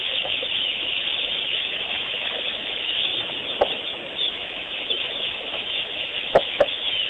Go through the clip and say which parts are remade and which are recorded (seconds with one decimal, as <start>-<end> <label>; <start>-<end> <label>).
0.0-3.1 remade; 3.1-4.3 recorded; 4.3-7.1 remade